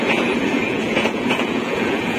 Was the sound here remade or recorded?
remade